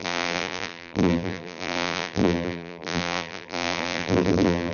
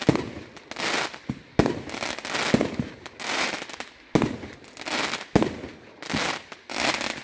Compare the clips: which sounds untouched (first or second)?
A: second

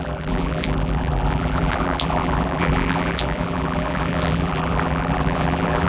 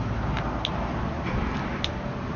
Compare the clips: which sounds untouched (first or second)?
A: second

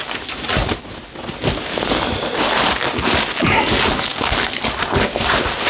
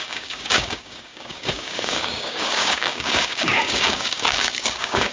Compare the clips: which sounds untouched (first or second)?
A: first